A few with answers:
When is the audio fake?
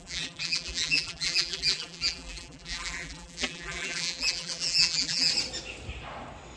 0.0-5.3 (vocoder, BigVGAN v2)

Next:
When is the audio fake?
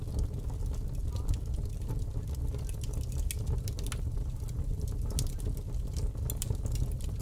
none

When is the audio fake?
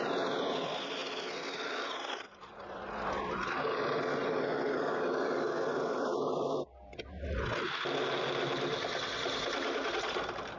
none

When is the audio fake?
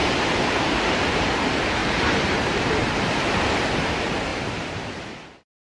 1.8-3.4 (vocoder, BigVGAN v2); 4.3-5.7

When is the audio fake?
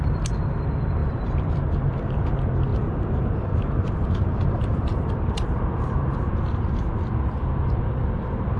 1.0-2.3 (vocoder, BigVGAN v2); 2.7-6.3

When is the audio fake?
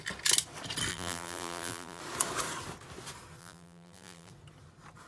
0.9-2.0 (vocoder, BigVGAN v2); 3.4-4.3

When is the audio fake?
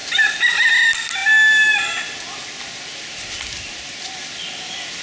0.0-0.7 (vocoder, BigVGAN v2)